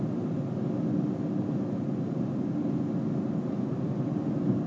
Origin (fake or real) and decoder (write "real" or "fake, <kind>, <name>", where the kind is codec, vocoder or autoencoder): real